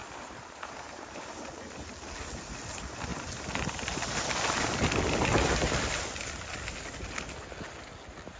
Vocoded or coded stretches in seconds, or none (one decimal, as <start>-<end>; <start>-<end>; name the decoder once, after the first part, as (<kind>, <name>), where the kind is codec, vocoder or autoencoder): 0.0-1.2 (vocoder, BigVGAN v2)